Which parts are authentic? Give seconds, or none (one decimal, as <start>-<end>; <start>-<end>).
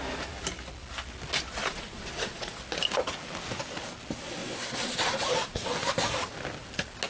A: 0.0-1.6; 2.6-4.4; 5.7-7.1